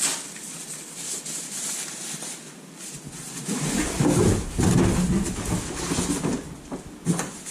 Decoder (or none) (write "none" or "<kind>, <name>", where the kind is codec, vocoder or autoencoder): none